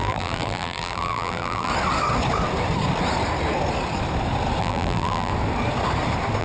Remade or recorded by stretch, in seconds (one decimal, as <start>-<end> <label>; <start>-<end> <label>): 0.0-1.7 remade; 1.7-4.6 recorded; 4.6-5.3 remade; 5.3-6.4 recorded

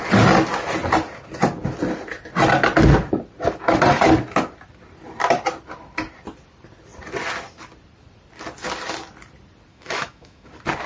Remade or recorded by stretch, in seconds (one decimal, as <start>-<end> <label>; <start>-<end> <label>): 0.0-9.7 recorded; 9.7-10.5 remade; 10.5-10.9 recorded